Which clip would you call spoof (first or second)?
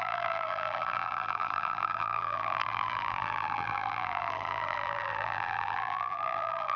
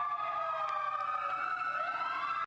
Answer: first